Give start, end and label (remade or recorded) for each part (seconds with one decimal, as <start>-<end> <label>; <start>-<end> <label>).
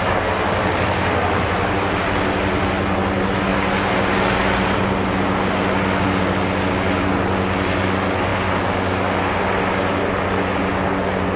0.0-11.4 recorded